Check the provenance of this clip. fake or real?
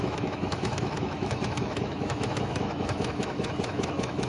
fake